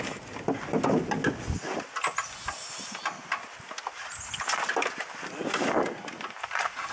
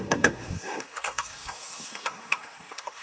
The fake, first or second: second